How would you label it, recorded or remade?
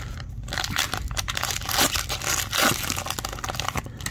recorded